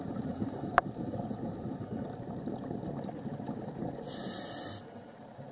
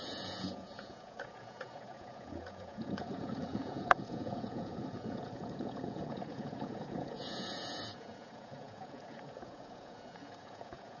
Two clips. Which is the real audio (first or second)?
first